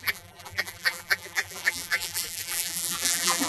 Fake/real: fake